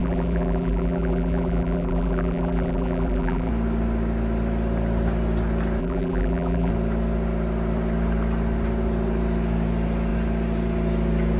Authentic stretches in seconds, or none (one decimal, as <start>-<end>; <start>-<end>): 3.5-5.8; 6.7-11.4